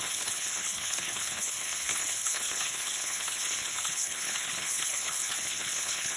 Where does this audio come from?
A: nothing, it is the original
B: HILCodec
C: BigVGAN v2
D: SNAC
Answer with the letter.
B